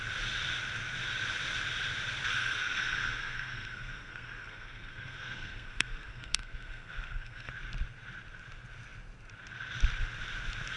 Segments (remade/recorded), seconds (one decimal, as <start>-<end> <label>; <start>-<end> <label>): 0.0-2.3 recorded; 2.3-7.5 remade; 7.5-10.8 recorded